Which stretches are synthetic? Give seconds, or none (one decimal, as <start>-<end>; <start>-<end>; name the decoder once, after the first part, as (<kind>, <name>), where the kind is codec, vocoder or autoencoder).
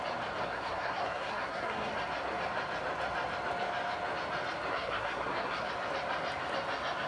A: 0.4-1.9 (codec, SNAC); 4.7-5.7